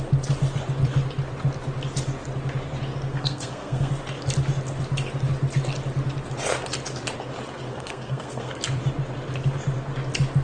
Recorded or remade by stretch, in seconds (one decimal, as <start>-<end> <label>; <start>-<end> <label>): 0.0-3.1 recorded; 3.1-3.9 remade; 3.9-7.7 recorded; 7.7-8.6 remade; 8.6-10.4 recorded